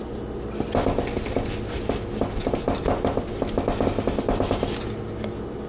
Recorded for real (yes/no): yes